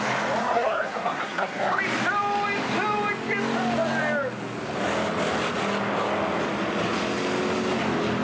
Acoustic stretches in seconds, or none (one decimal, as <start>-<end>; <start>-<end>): 0.0-0.4; 1.8-8.2